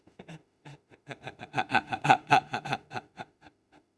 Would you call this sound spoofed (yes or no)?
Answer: yes